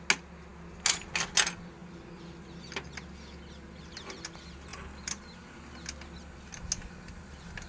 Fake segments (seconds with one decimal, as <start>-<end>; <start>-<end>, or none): none